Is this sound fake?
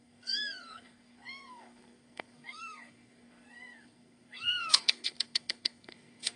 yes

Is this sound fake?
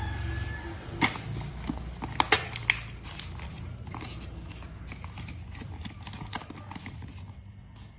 no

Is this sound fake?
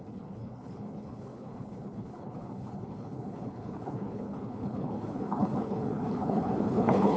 yes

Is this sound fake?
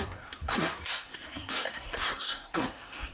yes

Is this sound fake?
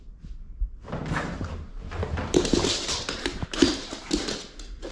yes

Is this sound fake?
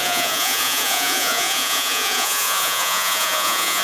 yes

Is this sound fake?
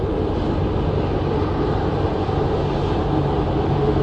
no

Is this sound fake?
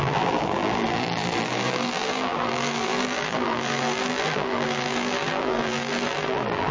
yes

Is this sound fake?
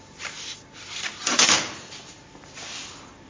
no